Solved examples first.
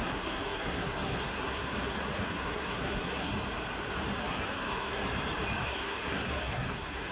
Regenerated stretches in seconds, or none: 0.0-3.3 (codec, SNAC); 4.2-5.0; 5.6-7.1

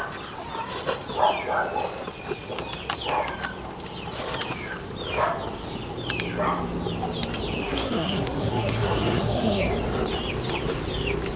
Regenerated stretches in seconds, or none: 7.6-9.7 (codec, SNAC)

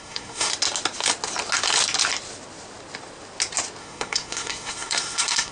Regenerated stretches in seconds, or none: 0.0-0.5 (codec, SNAC); 3.8-5.5

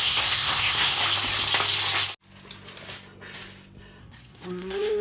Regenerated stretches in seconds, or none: 0.0-1.0 (codec, SNAC); 4.0-5.0